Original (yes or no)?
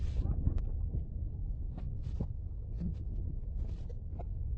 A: yes